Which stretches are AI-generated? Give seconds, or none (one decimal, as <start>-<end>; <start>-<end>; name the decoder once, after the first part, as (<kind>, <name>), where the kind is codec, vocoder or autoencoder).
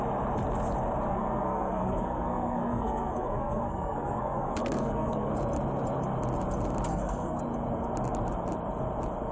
1.1-5.3 (codec, SNAC); 6.9-7.4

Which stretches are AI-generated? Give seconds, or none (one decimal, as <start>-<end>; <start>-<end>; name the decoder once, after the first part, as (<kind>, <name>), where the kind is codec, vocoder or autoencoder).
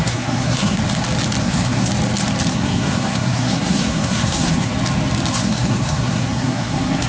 0.0-0.8 (codec, SNAC); 1.4-1.9; 2.5-4.7; 5.3-7.1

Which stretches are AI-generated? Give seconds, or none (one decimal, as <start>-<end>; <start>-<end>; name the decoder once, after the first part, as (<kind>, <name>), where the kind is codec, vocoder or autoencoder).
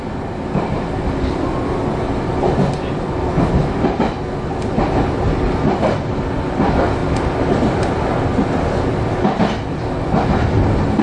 none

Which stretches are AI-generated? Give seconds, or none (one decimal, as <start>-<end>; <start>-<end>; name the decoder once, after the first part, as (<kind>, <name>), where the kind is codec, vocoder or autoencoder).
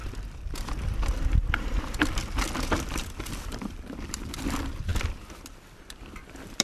0.0-4.9 (vocoder, BigVGAN v2); 5.5-6.6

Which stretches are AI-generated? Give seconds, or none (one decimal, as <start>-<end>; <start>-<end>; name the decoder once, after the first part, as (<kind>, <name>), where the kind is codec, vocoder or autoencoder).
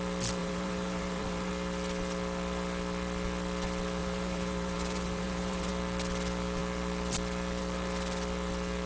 0.4-1.5 (vocoder, BigVGAN v2); 4.0-5.7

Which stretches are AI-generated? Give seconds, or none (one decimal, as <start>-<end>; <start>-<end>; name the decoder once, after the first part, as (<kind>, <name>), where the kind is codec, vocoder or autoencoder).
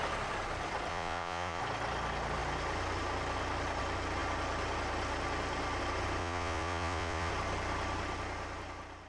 0.9-1.6 (vocoder, Vocos); 6.2-7.3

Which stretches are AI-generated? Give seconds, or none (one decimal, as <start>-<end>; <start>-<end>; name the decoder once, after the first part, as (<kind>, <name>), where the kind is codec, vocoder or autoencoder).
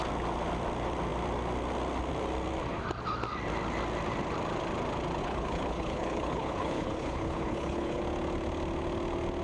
5.2-8.0 (codec, HILCodec)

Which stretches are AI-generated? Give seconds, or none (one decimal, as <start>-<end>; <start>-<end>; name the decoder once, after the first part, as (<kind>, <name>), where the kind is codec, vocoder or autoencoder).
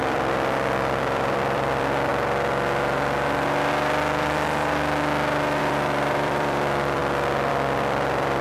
0.0-2.1 (vocoder, BigVGAN v2); 5.6-7.0; 7.5-8.4